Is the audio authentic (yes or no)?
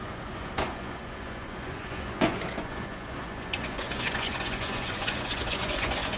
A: no